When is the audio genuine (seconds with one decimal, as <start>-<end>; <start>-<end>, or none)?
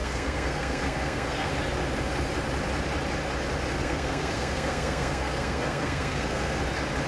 1.5-3.8; 6.6-7.1